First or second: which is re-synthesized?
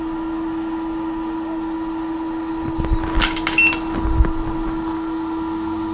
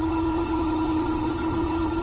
second